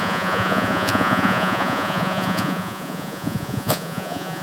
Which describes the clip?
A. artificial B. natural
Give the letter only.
A